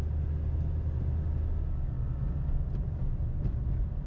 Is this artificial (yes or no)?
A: no